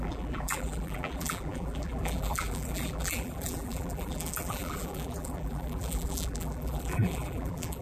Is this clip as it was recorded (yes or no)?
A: no